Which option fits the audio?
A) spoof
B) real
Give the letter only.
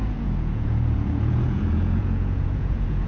A